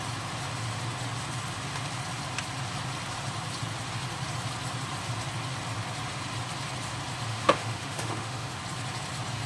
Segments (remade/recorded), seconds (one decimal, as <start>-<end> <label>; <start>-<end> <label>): 0.0-7.3 recorded; 7.3-8.6 remade; 8.6-9.5 recorded